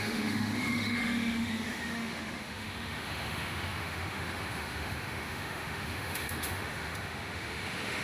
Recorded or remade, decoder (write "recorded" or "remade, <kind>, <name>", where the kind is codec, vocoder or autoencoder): remade, autoencoder, DAC-VAE